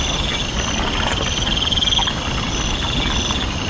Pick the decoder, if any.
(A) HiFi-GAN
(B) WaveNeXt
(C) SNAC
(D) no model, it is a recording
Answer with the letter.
D